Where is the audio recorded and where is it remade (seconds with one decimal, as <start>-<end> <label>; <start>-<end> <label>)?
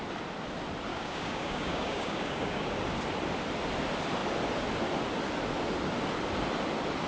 0.0-0.9 recorded; 0.9-2.7 remade; 2.7-7.1 recorded